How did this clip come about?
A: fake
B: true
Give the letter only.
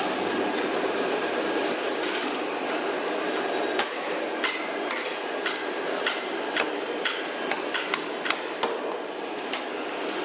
B